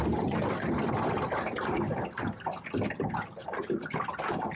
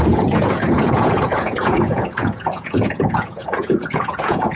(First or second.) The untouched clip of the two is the first